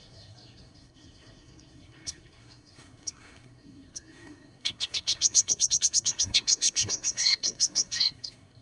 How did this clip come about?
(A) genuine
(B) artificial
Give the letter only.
B